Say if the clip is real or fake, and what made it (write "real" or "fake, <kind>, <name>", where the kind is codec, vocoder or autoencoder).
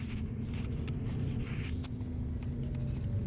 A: real